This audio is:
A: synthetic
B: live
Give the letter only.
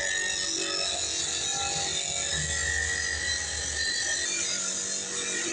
B